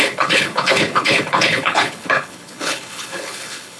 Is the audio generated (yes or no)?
yes